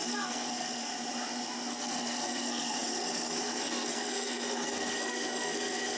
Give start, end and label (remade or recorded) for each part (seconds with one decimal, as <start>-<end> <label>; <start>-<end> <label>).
0.0-0.9 remade; 0.9-1.7 recorded; 1.7-6.0 remade